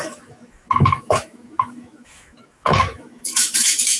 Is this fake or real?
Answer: fake